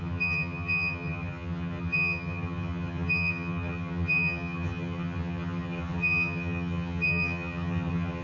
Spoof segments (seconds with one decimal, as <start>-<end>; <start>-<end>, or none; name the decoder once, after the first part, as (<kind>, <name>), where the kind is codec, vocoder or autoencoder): 0.0-8.2 (vocoder, HiFi-GAN)